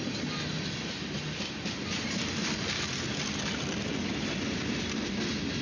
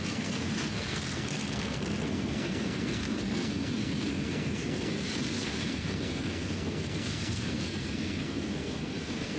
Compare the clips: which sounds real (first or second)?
first